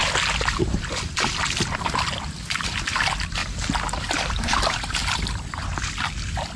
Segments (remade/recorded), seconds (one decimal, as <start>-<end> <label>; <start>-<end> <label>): 0.0-5.0 recorded; 5.0-6.0 remade; 6.0-6.6 recorded